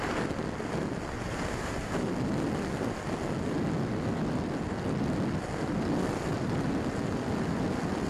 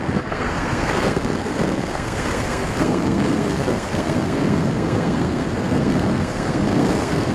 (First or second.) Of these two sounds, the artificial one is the second